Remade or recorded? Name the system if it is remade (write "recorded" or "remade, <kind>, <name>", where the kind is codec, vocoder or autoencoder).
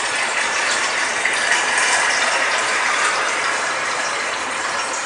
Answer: remade, vocoder, BigVGAN v2